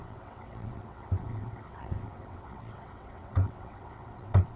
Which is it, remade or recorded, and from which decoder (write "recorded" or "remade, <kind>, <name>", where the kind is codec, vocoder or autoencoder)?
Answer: remade, vocoder, WaveNeXt